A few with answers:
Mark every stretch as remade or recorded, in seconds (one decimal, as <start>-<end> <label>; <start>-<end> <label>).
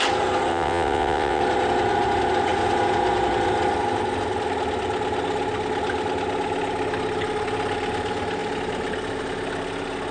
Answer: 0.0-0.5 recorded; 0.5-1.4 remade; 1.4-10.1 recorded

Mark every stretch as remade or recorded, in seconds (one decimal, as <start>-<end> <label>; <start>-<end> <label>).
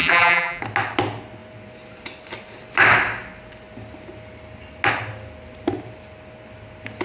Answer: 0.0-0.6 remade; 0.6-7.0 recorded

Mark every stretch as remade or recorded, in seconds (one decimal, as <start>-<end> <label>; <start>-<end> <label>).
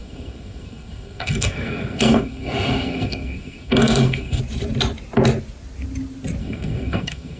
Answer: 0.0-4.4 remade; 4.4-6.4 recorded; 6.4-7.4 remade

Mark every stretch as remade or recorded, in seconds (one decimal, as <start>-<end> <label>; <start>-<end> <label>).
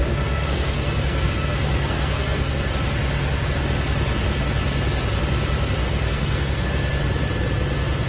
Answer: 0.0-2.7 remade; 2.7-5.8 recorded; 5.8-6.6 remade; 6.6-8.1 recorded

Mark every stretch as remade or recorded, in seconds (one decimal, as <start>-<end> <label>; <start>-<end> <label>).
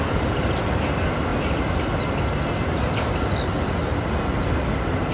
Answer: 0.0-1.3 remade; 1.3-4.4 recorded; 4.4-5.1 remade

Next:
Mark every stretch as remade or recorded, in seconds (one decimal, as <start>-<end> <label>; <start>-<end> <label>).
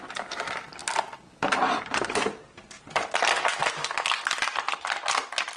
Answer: 0.0-5.6 recorded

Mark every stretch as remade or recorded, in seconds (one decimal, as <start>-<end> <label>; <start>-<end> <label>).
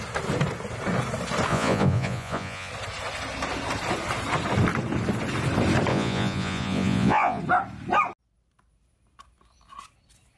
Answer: 0.0-1.5 recorded; 1.5-2.7 remade; 2.7-5.9 recorded; 5.9-7.4 remade; 7.4-10.4 recorded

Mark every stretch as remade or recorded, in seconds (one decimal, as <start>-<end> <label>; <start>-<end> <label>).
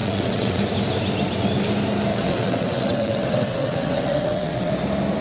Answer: 0.0-0.6 remade; 0.6-2.1 recorded; 2.1-4.7 remade; 4.7-5.2 recorded